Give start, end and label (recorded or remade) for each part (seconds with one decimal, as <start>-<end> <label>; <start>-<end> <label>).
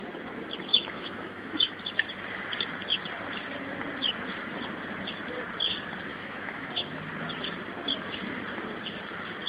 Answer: 0.0-0.7 recorded; 0.7-1.8 remade; 1.8-6.1 recorded; 6.1-6.7 remade; 6.7-9.5 recorded